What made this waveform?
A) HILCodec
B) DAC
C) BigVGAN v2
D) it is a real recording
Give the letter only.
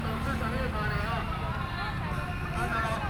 D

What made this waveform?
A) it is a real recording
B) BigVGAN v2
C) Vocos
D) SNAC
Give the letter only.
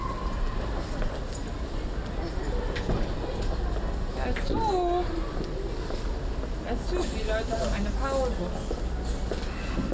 A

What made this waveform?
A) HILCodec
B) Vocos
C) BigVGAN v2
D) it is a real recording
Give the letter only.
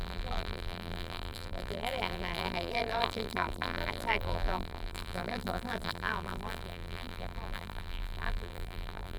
C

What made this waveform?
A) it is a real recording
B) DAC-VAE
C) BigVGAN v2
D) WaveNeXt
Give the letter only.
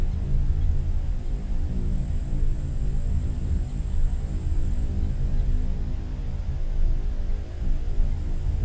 A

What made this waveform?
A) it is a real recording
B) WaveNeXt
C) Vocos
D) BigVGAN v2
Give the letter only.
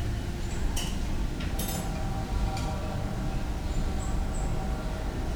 A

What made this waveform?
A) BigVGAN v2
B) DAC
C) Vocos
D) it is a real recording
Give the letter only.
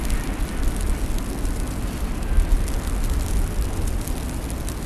D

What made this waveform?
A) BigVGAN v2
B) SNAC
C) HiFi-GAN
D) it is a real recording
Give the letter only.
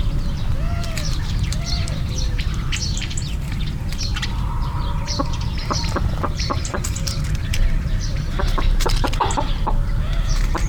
A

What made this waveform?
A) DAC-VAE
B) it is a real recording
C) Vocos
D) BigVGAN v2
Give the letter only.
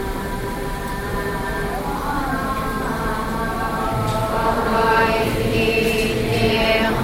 D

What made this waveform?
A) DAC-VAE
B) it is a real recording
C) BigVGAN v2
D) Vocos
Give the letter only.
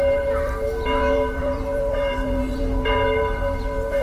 C